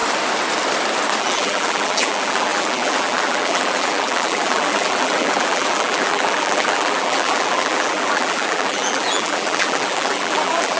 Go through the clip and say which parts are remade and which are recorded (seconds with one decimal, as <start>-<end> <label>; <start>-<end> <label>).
0.0-1.2 recorded; 1.2-10.8 remade

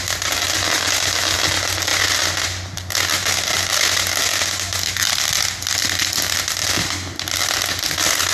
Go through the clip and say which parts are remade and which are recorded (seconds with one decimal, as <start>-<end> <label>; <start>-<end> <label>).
0.0-8.3 recorded

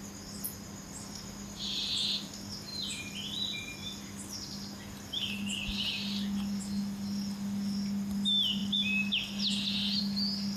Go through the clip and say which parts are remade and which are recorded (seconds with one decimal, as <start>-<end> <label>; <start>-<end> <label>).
0.0-10.6 recorded